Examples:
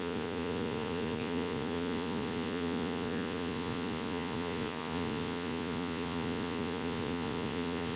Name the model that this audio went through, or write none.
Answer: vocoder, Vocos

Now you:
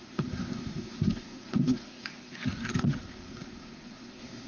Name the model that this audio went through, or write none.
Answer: codec, SNAC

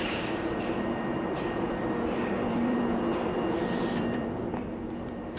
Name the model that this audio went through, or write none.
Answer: vocoder, BigVGAN v2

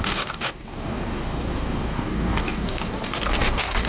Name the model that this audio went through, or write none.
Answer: codec, DAC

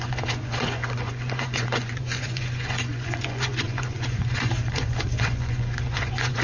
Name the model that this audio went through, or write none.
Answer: vocoder, Vocos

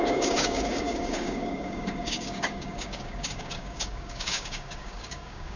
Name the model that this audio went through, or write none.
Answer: codec, DAC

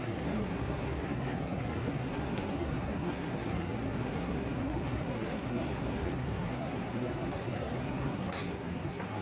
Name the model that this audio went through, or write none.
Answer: codec, SNAC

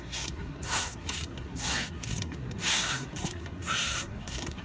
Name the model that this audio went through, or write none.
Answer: codec, SNAC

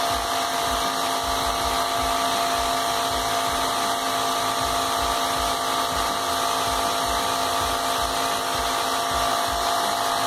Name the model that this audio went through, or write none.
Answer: none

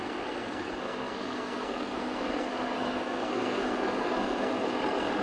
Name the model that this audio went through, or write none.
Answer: codec, SNAC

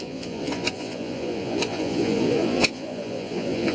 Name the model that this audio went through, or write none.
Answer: vocoder, Vocos